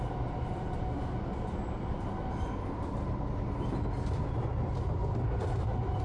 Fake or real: real